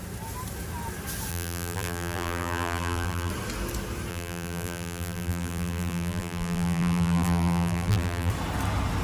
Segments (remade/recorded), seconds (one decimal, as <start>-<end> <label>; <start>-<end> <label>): 0.0-1.3 recorded; 1.3-3.3 remade; 3.3-4.1 recorded; 4.1-8.3 remade; 8.3-9.0 recorded